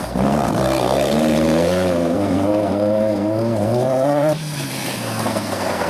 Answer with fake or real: fake